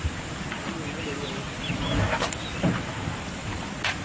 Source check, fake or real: real